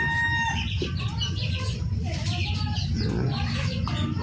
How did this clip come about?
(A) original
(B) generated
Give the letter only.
B